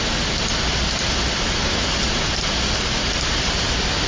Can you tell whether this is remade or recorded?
recorded